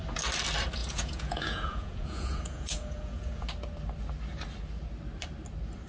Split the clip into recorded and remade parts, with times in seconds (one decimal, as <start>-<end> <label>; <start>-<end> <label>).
0.0-0.8 recorded; 0.8-3.5 remade; 3.5-5.9 recorded